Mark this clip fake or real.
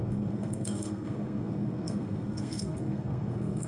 fake